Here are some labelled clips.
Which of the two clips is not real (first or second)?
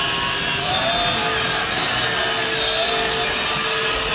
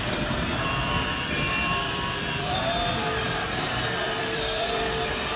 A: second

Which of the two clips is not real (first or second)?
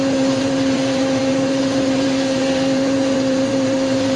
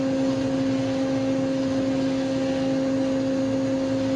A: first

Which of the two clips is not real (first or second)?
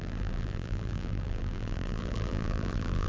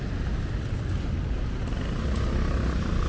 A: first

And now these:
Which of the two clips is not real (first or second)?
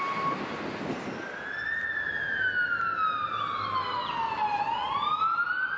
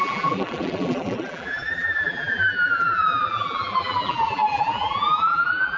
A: second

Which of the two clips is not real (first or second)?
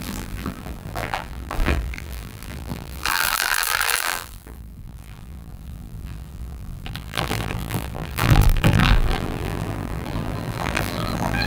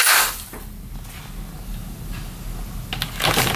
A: first